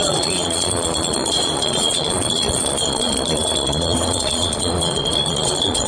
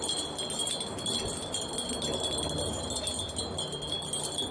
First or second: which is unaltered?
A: second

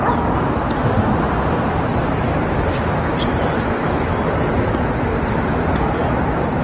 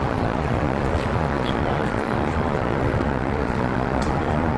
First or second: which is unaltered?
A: first